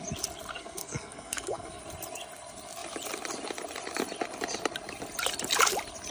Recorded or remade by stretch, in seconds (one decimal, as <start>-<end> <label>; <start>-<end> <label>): 0.0-0.5 recorded; 0.5-1.8 remade; 1.8-6.1 recorded